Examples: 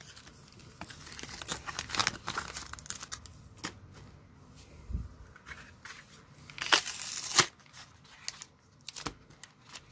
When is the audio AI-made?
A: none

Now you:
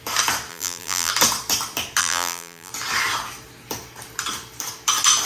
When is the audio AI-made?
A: 0.5-1.1 (vocoder, BigVGAN v2); 2.0-2.7

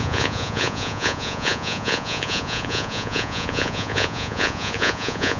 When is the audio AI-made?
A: 0.0-5.4 (vocoder, Vocos)